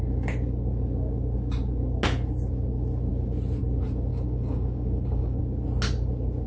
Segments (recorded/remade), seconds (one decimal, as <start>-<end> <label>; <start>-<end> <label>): 0.0-4.1 recorded; 4.1-5.4 remade; 5.4-6.5 recorded